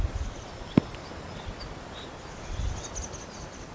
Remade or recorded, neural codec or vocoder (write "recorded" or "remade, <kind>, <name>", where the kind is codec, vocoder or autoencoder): recorded